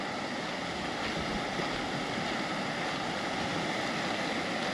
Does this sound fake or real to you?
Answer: real